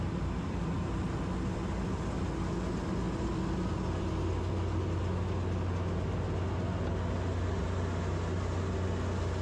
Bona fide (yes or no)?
yes